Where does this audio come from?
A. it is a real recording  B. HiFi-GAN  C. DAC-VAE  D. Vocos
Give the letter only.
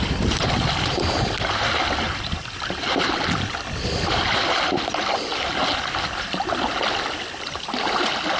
A